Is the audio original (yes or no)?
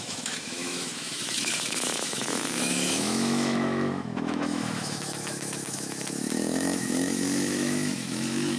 no